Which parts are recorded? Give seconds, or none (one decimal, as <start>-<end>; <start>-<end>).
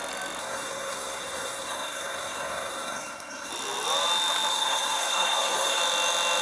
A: 0.0-0.4; 3.5-4.5; 5.8-6.4